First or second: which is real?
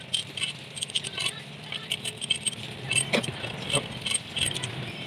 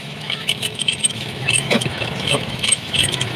first